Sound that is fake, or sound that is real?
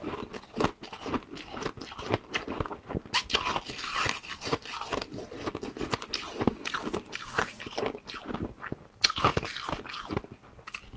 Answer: real